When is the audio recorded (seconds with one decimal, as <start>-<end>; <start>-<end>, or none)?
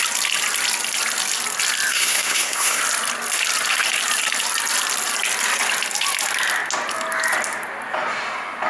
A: 0.0-1.9; 2.8-8.7